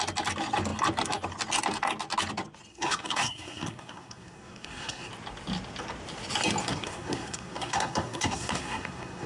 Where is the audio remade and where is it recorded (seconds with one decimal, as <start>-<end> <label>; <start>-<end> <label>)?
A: 0.0-2.7 recorded; 2.7-5.1 remade; 5.1-6.6 recorded; 6.6-9.3 remade